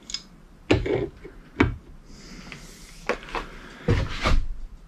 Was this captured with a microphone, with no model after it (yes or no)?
yes